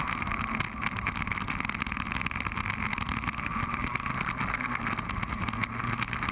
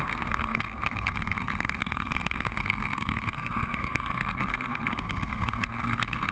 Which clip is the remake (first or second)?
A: second